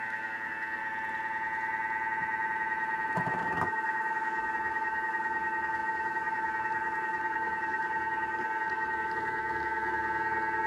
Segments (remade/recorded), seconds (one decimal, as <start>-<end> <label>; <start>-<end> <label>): 0.0-0.8 remade; 0.8-3.4 recorded; 3.4-10.7 remade